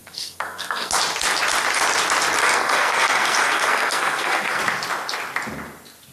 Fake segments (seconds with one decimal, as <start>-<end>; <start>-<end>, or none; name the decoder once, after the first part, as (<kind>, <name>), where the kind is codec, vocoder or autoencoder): 0.0-0.9 (codec, SNAC); 2.4-4.6